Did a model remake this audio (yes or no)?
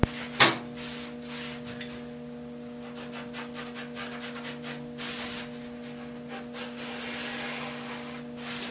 no